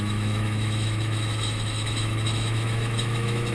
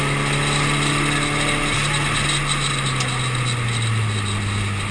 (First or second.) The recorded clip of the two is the second